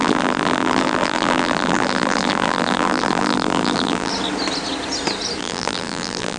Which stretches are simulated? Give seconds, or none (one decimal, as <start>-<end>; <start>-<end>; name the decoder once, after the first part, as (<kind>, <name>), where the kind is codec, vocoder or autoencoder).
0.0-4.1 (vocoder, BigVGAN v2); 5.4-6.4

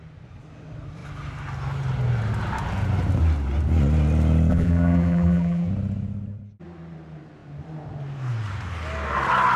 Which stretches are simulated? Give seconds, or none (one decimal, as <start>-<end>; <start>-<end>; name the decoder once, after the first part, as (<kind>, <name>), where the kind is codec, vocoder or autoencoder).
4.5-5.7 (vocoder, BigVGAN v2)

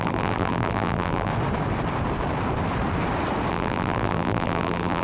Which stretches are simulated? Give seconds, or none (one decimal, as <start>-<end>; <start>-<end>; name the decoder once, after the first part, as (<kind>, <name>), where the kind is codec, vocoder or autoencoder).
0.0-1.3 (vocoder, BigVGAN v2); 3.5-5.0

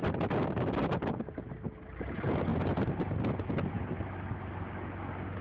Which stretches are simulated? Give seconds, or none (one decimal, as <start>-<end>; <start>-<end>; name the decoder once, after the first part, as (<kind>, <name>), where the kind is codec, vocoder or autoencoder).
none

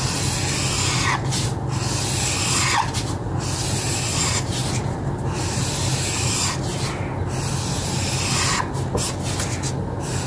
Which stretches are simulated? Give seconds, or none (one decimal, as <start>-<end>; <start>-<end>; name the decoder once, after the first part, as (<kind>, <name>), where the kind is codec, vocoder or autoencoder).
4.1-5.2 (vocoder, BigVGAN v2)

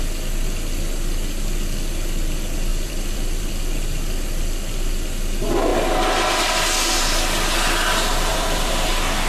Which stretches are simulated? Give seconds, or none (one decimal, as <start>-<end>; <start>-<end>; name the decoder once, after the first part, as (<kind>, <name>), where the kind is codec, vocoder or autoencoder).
2.7-3.5 (vocoder, BigVGAN v2); 8.3-8.9